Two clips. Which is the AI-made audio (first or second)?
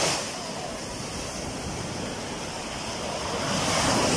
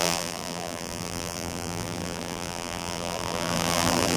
second